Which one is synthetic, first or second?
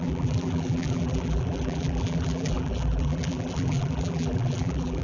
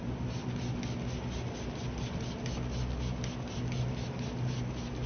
first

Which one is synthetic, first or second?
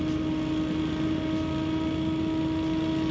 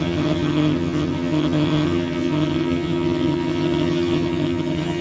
second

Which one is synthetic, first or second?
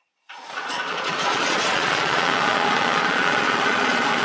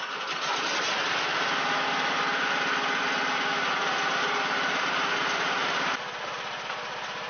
first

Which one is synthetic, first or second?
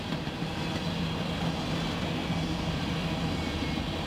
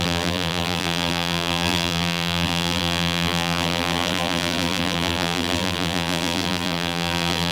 second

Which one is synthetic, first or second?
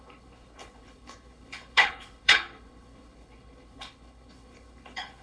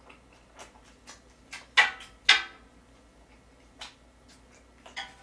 first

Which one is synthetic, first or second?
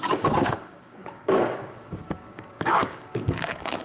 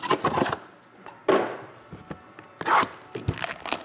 first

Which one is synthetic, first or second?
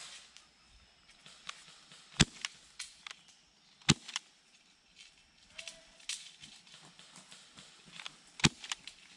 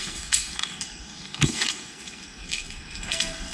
second